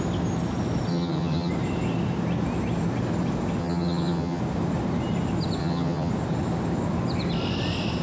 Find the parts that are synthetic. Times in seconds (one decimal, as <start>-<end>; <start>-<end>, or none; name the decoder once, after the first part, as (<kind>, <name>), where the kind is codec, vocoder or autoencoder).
0.9-1.5 (vocoder, HiFi-GAN); 3.6-4.4; 5.6-6.1